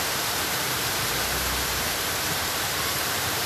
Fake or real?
fake